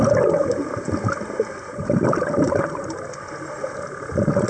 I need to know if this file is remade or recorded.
recorded